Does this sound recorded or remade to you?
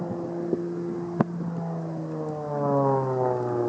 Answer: recorded